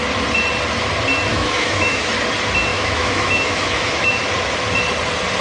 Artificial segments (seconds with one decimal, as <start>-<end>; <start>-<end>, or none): 1.3-2.1; 2.7-4.2